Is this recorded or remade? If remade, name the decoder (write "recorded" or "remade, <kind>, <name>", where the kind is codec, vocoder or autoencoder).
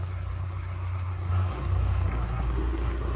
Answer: remade, codec, SNAC